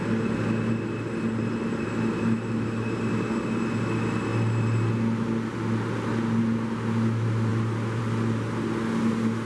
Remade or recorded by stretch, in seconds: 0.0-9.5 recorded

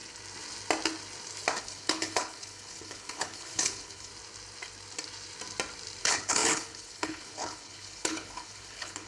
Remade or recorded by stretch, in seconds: 0.0-1.6 recorded; 1.6-4.1 remade; 4.1-6.0 recorded; 6.0-9.1 remade

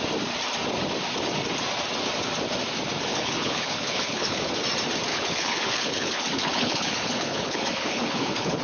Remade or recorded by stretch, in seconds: 0.0-3.1 recorded; 3.1-4.5 remade; 4.5-5.1 recorded; 5.1-8.6 remade

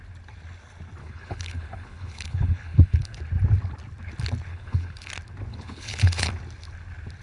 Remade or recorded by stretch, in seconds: 0.0-1.0 recorded; 1.0-3.2 remade; 3.2-4.5 recorded; 4.5-5.1 remade; 5.1-5.5 recorded; 5.5-6.3 remade; 6.3-7.2 recorded